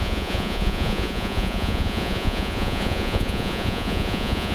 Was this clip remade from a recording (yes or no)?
yes